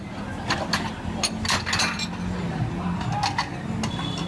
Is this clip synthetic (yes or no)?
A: no